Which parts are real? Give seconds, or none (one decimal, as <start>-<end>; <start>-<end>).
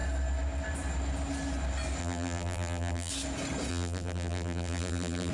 0.0-2.0; 3.1-3.7